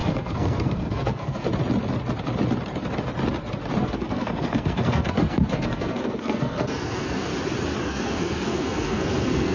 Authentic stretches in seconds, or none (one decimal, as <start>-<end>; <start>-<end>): 1.5-3.8; 7.3-7.8